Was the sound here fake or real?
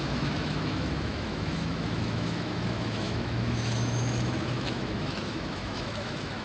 fake